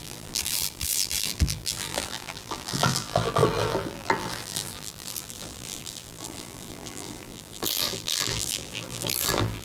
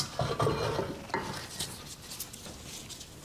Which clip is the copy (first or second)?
first